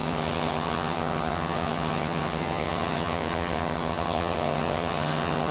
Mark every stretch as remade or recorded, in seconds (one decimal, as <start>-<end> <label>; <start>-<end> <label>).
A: 0.0-5.5 remade